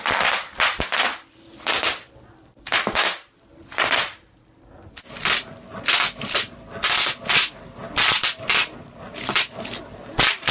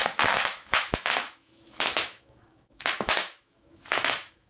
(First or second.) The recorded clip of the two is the first